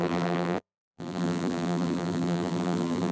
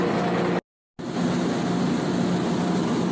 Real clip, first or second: second